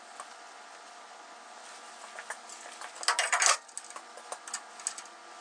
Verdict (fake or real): real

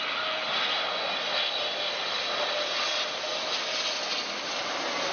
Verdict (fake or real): real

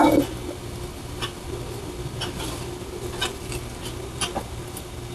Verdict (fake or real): real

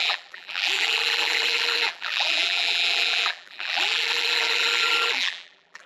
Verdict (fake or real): fake